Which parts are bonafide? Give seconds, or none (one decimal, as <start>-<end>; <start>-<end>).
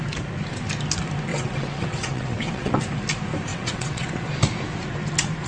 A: 0.0-1.3; 2.8-3.5; 4.1-5.5